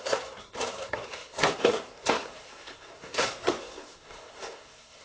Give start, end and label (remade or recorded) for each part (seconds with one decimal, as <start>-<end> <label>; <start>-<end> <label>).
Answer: 0.0-5.0 remade